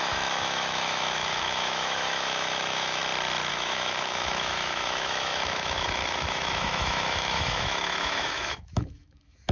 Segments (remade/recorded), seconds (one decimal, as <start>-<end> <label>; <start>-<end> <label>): 0.0-3.0 remade; 3.0-3.5 recorded; 3.5-9.5 remade